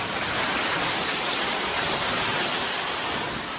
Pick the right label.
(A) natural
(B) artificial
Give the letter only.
A